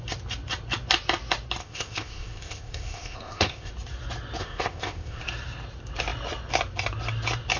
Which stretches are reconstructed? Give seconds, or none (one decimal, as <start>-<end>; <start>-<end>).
1.6-3.7; 4.4-5.2